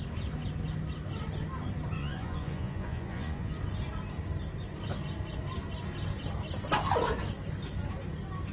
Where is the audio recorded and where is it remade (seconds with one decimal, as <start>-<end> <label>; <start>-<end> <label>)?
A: 0.0-2.0 recorded; 2.0-3.5 remade; 3.5-8.5 recorded